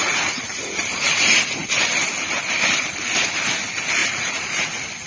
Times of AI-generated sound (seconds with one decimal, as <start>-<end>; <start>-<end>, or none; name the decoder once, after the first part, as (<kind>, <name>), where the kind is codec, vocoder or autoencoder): 0.0-0.8 (vocoder, Vocos); 4.0-4.6